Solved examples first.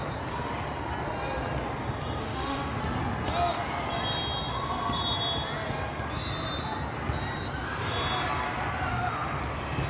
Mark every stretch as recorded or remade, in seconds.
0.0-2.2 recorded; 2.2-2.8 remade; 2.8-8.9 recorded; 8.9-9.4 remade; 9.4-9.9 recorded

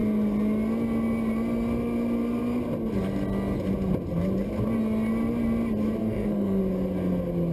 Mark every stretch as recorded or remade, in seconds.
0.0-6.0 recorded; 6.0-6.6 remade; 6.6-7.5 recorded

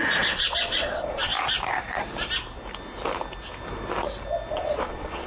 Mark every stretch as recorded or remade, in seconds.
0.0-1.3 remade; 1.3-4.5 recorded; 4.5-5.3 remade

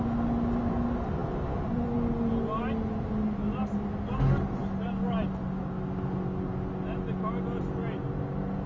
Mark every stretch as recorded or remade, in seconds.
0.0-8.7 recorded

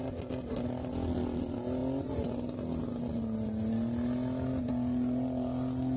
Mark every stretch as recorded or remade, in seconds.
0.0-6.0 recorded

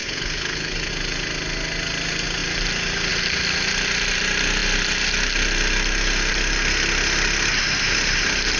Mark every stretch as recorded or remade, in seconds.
0.0-0.9 remade; 0.9-8.6 recorded